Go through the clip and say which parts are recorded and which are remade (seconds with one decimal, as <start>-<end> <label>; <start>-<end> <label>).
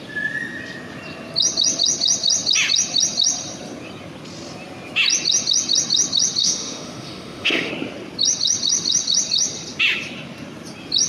0.0-6.4 recorded; 6.4-7.7 remade; 7.7-11.1 recorded